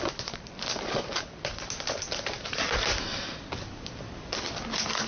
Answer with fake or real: real